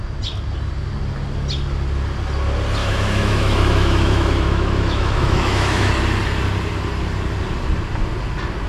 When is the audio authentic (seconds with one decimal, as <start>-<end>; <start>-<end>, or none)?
0.0-2.8; 5.9-8.7